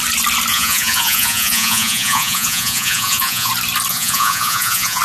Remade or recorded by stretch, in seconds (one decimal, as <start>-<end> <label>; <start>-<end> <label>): 0.0-0.5 recorded; 0.5-3.5 remade; 3.5-3.9 recorded; 3.9-5.0 remade